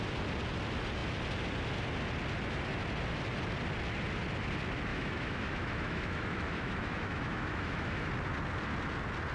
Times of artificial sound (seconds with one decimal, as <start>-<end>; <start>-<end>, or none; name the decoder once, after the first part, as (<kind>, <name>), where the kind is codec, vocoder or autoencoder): 4.9-8.1 (autoencoder, DAC-VAE)